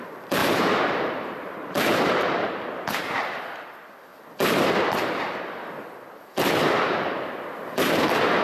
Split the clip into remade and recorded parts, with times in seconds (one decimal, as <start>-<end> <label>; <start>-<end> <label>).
0.0-0.4 recorded; 0.4-3.4 remade; 3.4-8.4 recorded